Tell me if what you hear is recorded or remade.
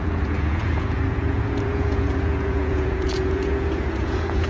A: remade